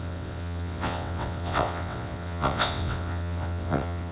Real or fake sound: fake